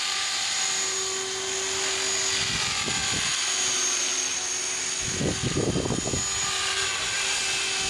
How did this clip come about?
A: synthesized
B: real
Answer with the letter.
B